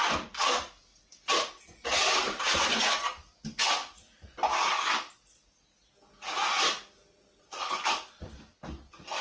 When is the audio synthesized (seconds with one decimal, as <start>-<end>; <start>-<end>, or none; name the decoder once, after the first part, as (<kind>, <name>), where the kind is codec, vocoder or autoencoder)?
0.9-1.8 (vocoder, Vocos)